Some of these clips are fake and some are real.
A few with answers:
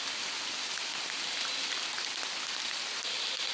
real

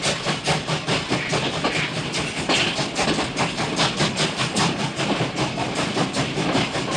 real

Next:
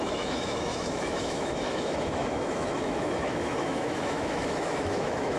fake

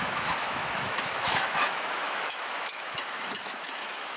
fake